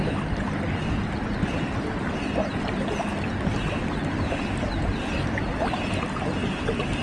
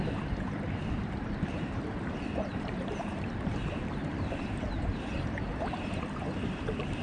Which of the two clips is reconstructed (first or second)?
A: second